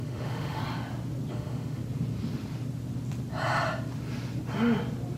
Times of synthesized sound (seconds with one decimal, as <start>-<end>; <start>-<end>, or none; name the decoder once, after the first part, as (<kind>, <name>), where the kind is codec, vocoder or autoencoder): 0.0-0.6 (autoencoder, DAC-VAE); 1.3-1.8